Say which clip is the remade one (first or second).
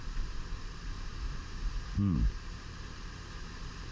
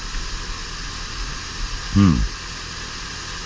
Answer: first